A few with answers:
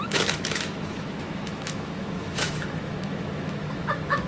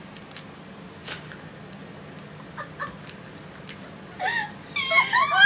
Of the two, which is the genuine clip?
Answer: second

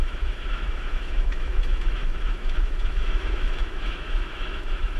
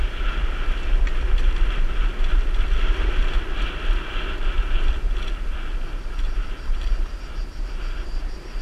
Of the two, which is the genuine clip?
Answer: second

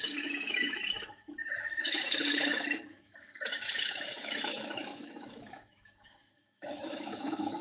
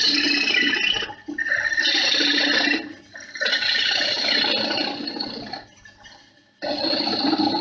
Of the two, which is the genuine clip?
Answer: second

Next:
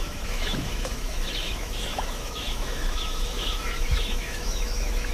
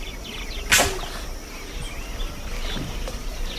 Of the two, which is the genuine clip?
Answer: second